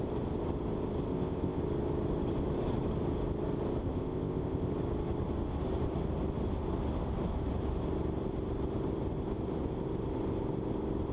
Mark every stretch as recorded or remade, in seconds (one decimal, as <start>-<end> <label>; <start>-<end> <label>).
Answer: 0.0-1.1 recorded; 1.1-1.6 remade; 1.6-3.8 recorded; 3.8-4.7 remade; 4.7-11.1 recorded